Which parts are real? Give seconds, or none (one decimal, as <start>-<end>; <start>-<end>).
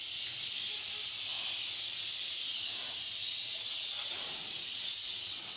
0.0-3.2